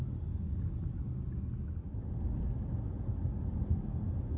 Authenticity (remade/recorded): recorded